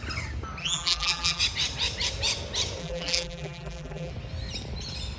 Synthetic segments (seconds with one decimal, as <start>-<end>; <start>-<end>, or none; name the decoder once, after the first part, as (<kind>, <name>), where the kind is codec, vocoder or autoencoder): 0.6-1.4 (vocoder, BigVGAN v2); 2.8-4.1